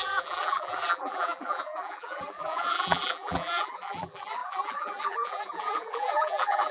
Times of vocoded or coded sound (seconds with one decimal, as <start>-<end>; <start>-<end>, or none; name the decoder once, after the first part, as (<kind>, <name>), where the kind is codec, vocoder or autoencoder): 0.0-6.7 (vocoder, BigVGAN v2)